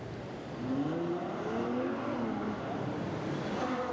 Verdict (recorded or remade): recorded